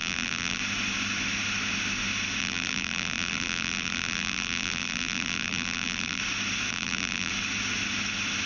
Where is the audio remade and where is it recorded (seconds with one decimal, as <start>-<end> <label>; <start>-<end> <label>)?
0.0-0.6 remade; 0.6-2.4 recorded; 2.4-6.2 remade; 6.2-6.7 recorded; 6.7-7.3 remade; 7.3-8.5 recorded

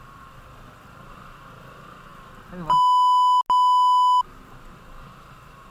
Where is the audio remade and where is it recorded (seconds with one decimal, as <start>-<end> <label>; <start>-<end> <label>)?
0.0-5.7 recorded